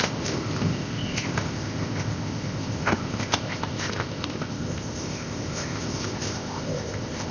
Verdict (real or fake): fake